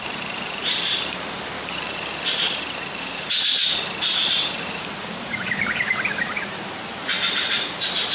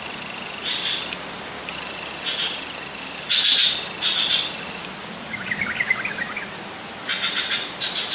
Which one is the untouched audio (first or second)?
second